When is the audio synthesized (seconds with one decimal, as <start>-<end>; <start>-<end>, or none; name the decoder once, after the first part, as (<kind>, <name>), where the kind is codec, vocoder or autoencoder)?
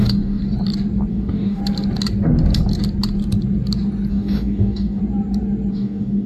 0.0-0.4 (codec, DAC); 1.1-1.6; 4.1-5.0; 5.7-6.3